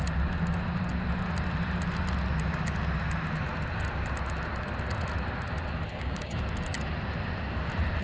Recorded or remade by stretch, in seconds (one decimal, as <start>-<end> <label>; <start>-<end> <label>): 0.0-5.9 recorded; 5.9-6.4 remade; 6.4-8.0 recorded